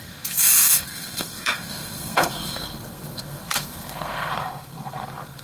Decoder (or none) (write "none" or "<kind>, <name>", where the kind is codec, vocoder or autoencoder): codec, SNAC